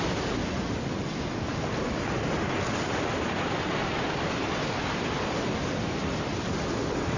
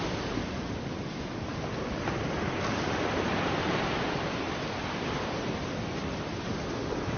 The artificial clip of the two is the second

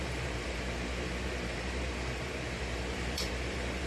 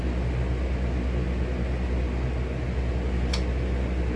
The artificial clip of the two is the first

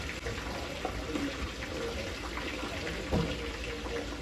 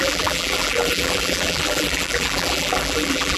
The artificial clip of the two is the second